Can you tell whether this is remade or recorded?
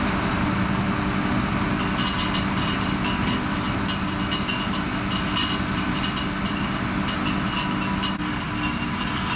recorded